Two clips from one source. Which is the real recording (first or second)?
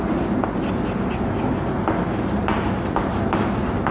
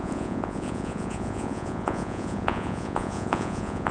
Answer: first